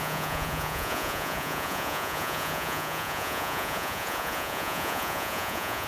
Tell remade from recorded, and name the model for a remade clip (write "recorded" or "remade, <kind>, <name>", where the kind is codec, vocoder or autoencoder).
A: remade, vocoder, Vocos